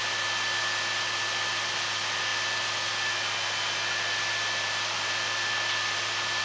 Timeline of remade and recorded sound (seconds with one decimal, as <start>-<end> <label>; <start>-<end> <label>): 0.0-6.4 recorded